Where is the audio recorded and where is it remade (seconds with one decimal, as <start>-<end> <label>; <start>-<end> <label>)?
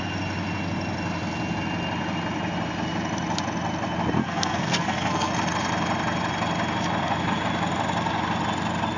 0.0-4.2 recorded; 4.2-5.3 remade; 5.3-9.0 recorded